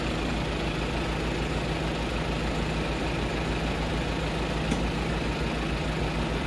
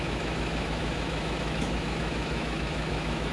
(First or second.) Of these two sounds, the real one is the first